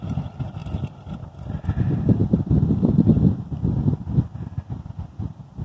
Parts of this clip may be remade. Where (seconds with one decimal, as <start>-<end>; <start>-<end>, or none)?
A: none